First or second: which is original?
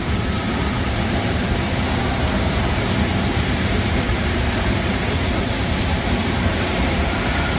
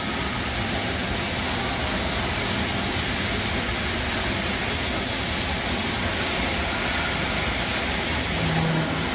second